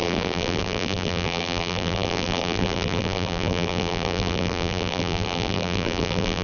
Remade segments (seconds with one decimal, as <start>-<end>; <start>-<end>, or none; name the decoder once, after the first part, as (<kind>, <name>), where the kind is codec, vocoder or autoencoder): 0.0-6.4 (vocoder, BigVGAN v2)